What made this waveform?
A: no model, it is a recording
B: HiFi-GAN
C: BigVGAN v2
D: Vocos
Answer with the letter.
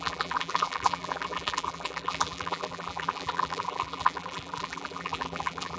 C